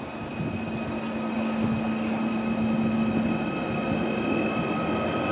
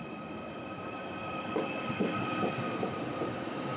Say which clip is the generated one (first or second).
second